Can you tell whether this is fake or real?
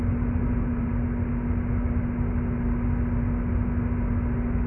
real